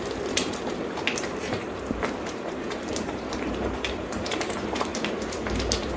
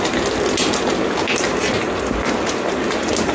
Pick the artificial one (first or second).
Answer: first